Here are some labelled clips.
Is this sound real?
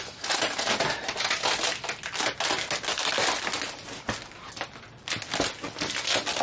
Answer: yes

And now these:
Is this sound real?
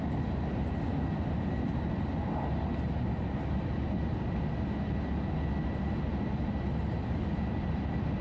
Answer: yes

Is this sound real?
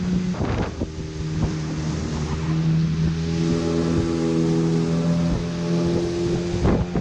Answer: yes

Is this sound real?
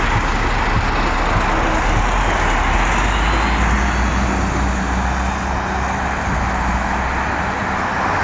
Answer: yes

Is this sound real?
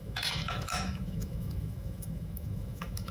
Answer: no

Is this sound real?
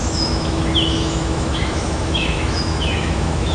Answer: no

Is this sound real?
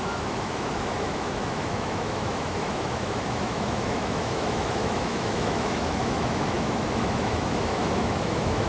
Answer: no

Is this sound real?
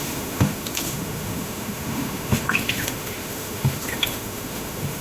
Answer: no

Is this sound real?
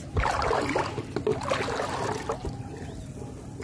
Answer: yes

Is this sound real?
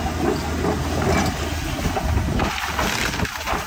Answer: yes